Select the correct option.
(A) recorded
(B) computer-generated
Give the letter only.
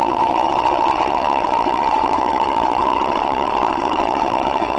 B